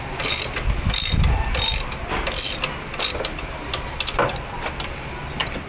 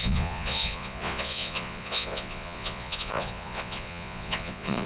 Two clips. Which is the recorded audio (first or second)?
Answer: first